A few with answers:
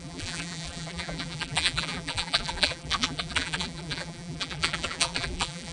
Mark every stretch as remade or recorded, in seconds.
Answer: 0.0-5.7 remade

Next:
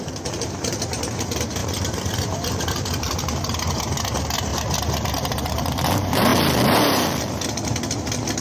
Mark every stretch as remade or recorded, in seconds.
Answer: 0.0-4.5 remade; 4.5-5.1 recorded; 5.1-6.3 remade; 6.3-8.4 recorded